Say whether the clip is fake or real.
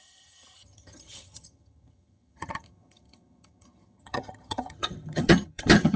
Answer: fake